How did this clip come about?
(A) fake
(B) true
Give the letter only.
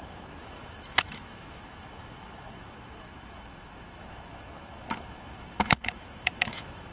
A